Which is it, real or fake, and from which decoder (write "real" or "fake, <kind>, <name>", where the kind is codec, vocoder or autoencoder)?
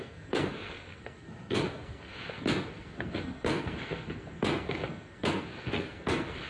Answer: fake, codec, SNAC